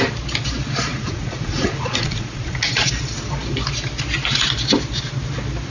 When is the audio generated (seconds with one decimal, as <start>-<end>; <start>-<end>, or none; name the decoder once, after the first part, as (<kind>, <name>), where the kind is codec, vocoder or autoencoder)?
0.9-2.9 (vocoder, Vocos)